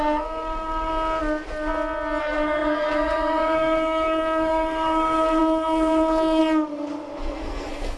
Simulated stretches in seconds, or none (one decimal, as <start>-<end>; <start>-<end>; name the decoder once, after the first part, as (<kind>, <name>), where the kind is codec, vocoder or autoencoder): 0.0-0.9 (codec, SNAC); 2.2-6.4; 7.2-8.0